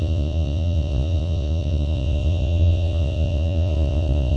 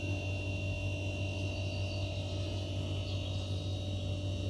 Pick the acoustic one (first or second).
second